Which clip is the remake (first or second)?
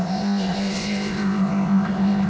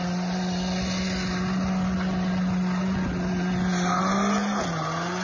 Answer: first